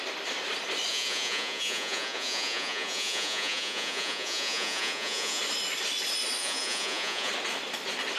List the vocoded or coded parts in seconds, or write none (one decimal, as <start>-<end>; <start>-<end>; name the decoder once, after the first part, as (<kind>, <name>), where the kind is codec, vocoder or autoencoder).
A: 0.9-5.4 (vocoder, Vocos); 6.4-7.3